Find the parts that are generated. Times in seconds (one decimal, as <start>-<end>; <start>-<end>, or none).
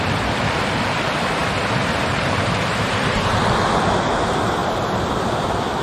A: 1.4-3.4; 4.6-5.1